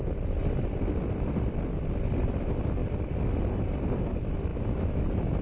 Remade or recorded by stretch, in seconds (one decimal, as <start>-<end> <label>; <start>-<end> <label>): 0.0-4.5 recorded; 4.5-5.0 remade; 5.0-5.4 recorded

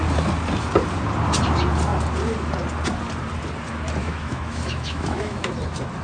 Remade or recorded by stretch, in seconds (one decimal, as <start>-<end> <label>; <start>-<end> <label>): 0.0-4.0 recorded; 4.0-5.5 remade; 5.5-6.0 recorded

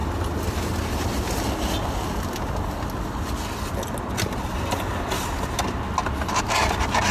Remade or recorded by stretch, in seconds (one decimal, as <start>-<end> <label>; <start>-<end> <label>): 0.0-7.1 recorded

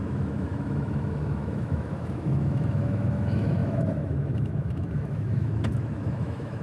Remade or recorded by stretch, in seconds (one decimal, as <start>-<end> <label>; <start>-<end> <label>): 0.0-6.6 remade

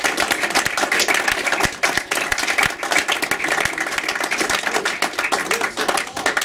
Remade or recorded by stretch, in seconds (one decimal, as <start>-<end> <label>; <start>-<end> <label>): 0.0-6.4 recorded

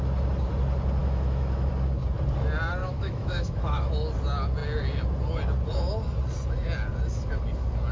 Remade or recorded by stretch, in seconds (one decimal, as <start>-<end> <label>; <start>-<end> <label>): 0.0-1.0 recorded; 1.0-1.7 remade; 1.7-2.8 recorded; 2.8-3.9 remade; 3.9-7.9 recorded

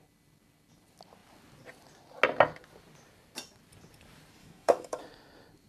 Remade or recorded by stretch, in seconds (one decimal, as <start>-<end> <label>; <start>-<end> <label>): 0.0-4.4 recorded; 4.4-5.0 remade; 5.0-5.7 recorded

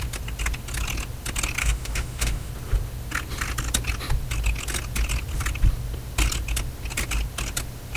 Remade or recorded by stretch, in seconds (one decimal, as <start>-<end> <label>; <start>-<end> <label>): 0.0-1.6 recorded; 1.6-2.5 remade; 2.5-8.0 recorded